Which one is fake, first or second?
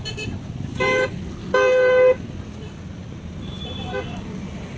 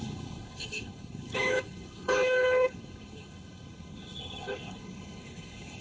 second